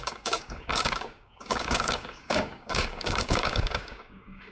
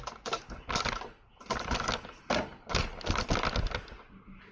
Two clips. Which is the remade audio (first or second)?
first